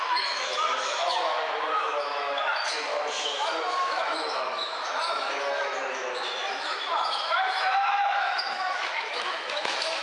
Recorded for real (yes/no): no